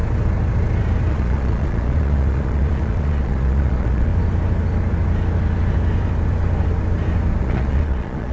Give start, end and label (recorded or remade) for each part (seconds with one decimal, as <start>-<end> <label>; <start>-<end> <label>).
0.0-1.1 recorded; 1.1-4.1 remade; 4.1-7.4 recorded; 7.4-8.3 remade